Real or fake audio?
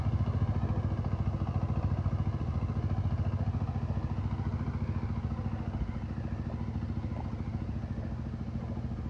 real